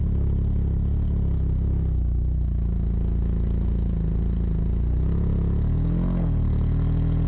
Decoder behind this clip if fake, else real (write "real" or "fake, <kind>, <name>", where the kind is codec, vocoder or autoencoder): real